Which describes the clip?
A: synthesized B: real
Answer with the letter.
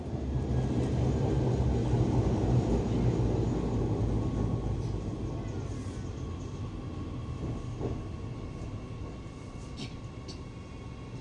B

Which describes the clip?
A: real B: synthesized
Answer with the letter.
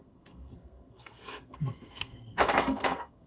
B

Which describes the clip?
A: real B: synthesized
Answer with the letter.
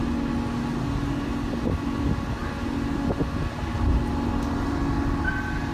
A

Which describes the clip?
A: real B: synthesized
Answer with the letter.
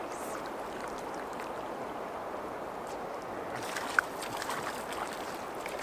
A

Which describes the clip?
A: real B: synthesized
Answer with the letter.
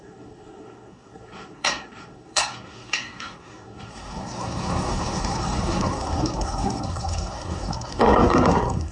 B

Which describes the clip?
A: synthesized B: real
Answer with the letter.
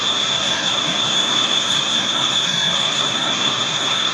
A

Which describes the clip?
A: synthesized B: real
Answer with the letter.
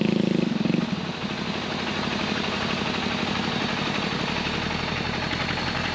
B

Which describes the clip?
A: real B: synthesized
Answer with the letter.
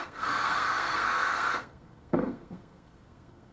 B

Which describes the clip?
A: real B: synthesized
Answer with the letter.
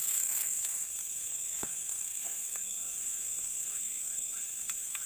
B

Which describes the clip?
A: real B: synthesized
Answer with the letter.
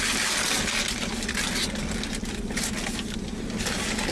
A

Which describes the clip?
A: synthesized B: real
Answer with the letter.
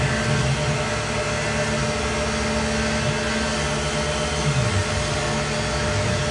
B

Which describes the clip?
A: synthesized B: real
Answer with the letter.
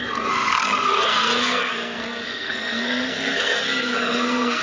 A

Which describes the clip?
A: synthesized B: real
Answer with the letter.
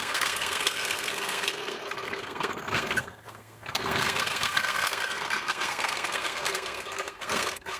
A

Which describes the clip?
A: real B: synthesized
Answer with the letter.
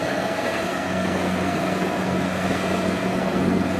B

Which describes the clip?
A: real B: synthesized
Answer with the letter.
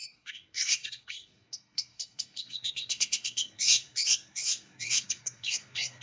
B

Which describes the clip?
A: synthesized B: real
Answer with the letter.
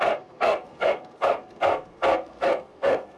A